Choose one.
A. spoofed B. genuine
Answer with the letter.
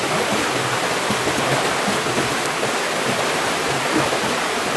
B